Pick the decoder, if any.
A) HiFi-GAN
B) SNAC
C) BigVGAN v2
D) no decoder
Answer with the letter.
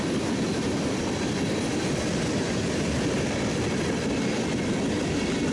C